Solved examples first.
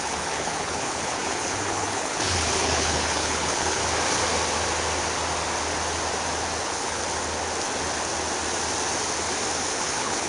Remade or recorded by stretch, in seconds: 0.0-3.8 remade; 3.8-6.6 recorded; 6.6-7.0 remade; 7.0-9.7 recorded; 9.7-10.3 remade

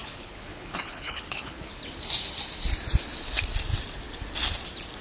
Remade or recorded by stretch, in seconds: 0.0-1.8 remade; 1.8-5.0 recorded

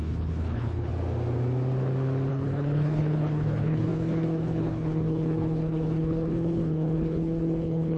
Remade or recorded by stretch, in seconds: 0.0-0.9 remade; 0.9-2.3 recorded; 2.3-8.0 remade

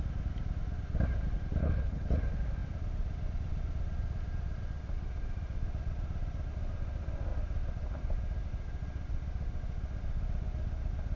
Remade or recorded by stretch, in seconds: 0.0-1.6 recorded; 1.6-2.2 remade; 2.2-11.2 recorded

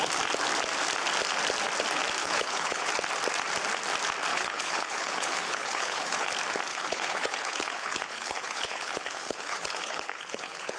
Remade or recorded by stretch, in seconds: 0.0-2.2 recorded; 2.2-2.9 remade; 2.9-4.3 recorded; 4.3-6.3 remade; 6.3-6.7 recorded; 6.7-10.8 remade

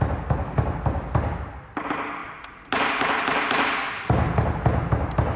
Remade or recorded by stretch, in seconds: 0.0-5.4 recorded

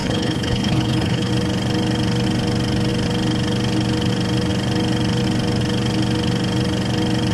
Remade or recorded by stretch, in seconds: 0.0-1.3 remade; 1.3-7.3 recorded

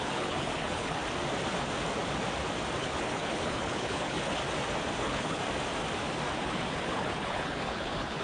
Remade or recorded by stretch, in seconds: 0.0-1.0 remade; 1.0-2.8 recorded; 2.8-4.4 remade; 4.4-5.0 recorded; 5.0-5.4 remade; 5.4-6.4 recorded; 6.4-8.2 remade